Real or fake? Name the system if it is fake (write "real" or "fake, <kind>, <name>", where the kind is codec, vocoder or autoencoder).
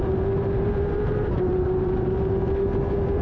fake, vocoder, BigVGAN v2